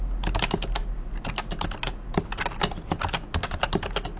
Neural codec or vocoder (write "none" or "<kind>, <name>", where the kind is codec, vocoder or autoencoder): none